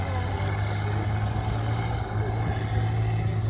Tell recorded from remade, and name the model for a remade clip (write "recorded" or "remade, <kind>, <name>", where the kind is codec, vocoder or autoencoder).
recorded